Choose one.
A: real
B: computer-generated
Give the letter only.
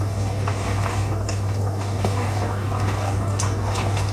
B